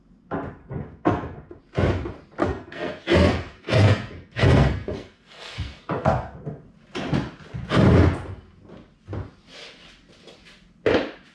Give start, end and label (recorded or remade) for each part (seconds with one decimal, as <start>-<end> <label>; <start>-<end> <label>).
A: 0.0-0.6 recorded; 0.6-1.6 remade; 1.6-2.4 recorded; 2.4-6.7 remade; 6.7-11.3 recorded